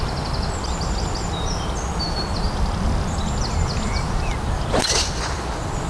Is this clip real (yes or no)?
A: yes